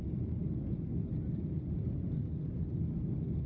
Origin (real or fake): real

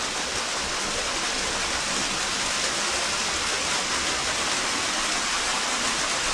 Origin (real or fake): real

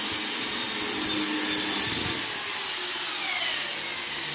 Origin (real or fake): real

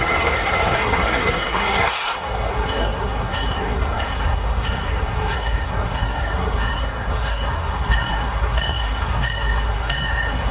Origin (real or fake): fake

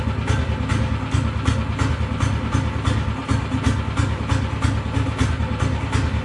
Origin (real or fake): real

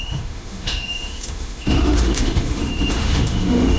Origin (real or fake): fake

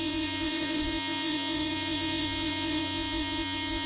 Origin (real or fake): fake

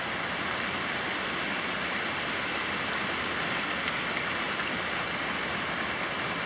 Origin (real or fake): real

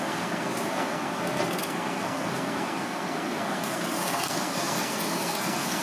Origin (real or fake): fake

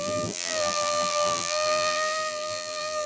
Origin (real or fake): fake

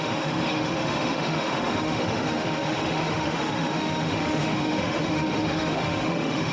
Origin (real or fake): fake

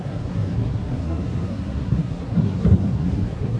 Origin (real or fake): fake